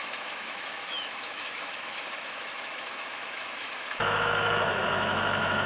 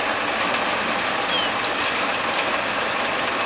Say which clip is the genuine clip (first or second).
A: second